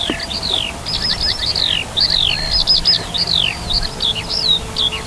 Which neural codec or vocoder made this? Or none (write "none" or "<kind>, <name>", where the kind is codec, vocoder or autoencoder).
none